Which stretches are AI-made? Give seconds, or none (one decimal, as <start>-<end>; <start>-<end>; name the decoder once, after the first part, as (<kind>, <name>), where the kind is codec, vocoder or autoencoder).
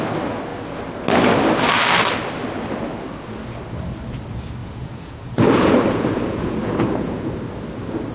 4.6-7.3 (vocoder, Vocos)